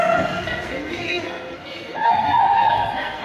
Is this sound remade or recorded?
remade